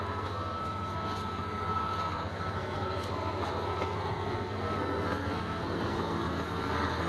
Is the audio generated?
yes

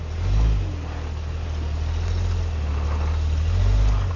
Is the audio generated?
no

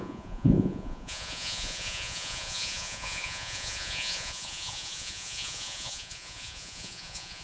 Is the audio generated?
yes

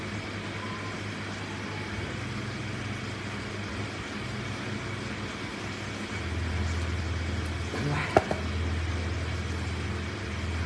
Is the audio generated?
no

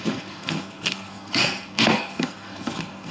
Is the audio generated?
yes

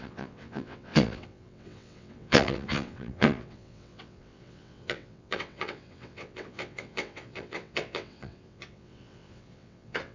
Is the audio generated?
yes